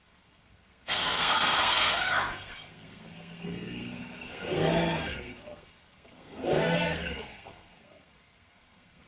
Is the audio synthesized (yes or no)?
yes